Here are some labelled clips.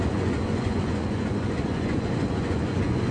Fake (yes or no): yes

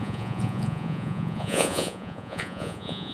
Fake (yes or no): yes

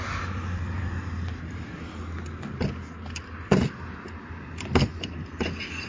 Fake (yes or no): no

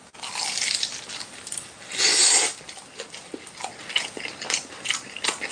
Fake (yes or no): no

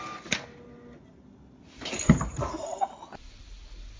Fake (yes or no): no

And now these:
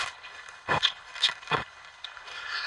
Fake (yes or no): yes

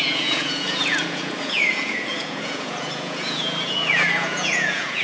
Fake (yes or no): yes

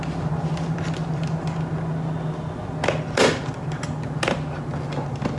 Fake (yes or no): no